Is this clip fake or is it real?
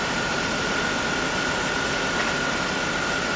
real